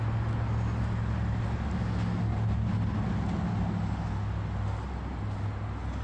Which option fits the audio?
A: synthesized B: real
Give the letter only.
B